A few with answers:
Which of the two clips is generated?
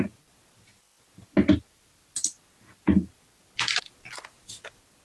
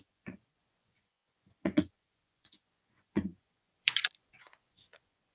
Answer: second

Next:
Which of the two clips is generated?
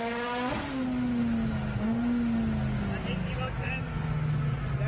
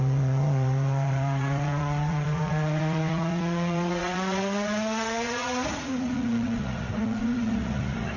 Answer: second